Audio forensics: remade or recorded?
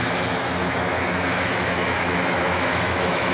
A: remade